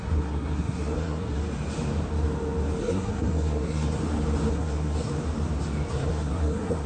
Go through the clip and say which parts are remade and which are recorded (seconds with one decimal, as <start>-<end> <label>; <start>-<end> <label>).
0.0-1.4 remade; 1.4-2.8 recorded; 2.8-4.0 remade; 4.0-4.5 recorded; 4.5-5.1 remade; 5.1-5.9 recorded; 5.9-6.9 remade